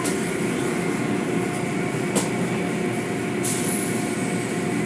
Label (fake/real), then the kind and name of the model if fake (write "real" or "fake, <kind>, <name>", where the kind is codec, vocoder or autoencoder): real